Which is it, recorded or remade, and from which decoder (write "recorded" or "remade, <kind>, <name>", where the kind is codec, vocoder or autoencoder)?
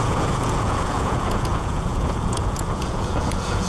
remade, vocoder, Vocos